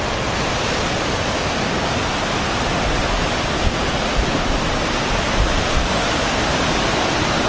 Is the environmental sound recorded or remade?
recorded